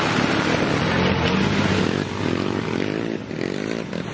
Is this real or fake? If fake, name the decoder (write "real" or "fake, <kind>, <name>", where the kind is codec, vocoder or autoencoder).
real